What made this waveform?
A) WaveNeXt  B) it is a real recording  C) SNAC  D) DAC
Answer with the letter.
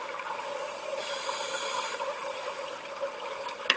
B